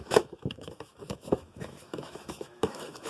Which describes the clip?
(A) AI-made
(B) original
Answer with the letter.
A